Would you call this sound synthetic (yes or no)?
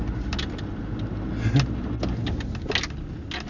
no